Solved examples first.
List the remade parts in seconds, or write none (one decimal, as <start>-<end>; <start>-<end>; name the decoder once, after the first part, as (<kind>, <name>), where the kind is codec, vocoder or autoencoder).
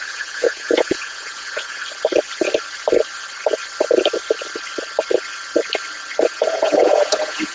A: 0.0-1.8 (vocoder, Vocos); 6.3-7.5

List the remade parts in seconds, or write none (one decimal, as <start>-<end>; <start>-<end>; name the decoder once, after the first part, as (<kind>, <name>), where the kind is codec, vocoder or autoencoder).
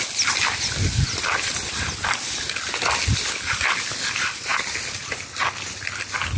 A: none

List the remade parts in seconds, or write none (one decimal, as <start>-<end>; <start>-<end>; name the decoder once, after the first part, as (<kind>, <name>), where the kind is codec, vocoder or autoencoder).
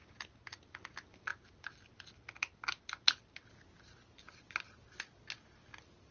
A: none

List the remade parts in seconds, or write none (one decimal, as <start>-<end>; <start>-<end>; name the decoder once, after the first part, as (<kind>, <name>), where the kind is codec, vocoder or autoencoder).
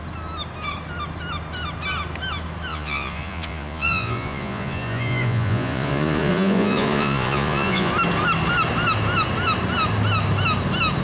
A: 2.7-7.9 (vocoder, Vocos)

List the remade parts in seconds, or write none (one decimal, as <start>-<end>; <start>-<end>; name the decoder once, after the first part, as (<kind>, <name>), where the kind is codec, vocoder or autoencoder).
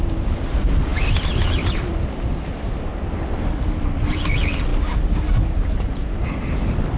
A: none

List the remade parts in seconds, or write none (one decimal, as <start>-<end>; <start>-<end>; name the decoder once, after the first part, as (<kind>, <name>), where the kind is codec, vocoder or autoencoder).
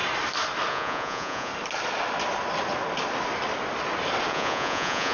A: 0.7-1.5 (vocoder, Vocos); 4.3-5.1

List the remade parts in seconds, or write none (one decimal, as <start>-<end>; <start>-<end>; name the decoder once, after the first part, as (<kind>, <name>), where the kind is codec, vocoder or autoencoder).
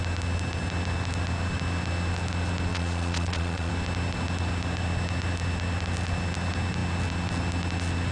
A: 2.7-3.7 (vocoder, Vocos)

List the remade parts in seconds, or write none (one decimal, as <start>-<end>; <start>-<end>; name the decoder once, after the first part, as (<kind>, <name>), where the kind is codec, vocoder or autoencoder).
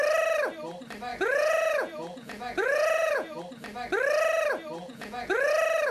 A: 1.1-3.4 (vocoder, Vocos); 4.8-5.5